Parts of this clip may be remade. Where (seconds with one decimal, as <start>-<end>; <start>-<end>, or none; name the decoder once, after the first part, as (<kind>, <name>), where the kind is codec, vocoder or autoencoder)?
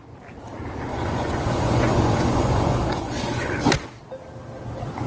0.9-3.6 (vocoder, Vocos)